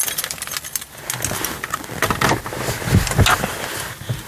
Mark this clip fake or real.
real